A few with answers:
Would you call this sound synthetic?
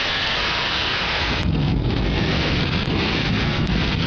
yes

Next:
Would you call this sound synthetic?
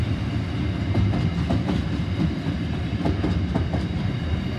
no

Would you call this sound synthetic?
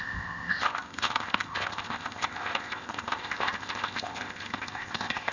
yes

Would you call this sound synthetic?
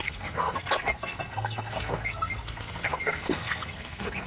yes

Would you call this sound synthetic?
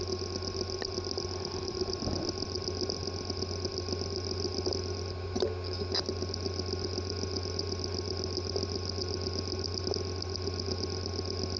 no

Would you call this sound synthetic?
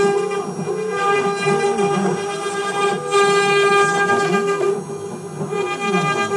no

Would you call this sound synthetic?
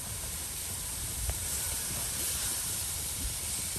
yes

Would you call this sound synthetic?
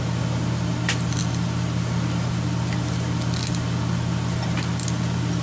no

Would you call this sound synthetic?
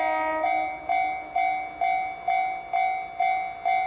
no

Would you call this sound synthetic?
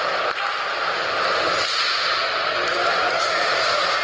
no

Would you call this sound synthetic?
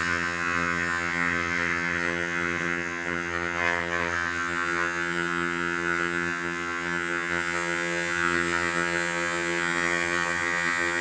yes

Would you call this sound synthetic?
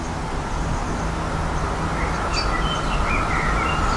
no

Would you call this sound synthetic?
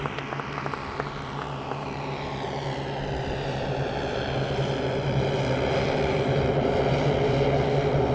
no